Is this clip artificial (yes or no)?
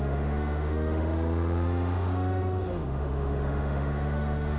yes